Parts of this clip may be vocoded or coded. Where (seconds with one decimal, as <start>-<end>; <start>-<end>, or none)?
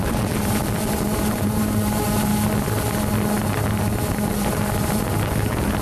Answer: 0.0-2.3; 3.4-5.8